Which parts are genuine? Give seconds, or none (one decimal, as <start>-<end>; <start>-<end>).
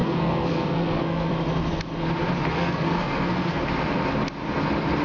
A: 1.3-2.5; 3.6-5.0